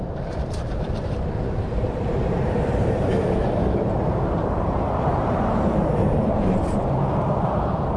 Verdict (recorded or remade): remade